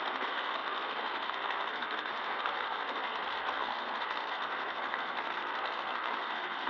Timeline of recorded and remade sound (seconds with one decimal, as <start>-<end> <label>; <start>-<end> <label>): 0.0-6.7 remade